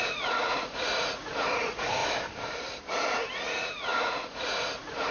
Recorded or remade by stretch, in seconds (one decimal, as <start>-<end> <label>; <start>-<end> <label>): 0.0-2.0 remade; 2.0-3.3 recorded; 3.3-5.1 remade